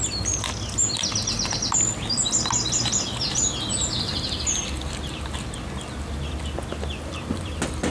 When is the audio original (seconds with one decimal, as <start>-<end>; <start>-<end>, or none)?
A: 0.0-7.9

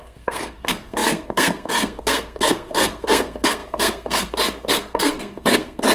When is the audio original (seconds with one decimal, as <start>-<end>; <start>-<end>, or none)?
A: none

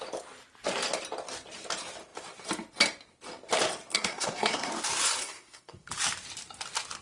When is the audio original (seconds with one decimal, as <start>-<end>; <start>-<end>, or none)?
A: 0.0-3.9; 4.7-5.2; 5.9-7.0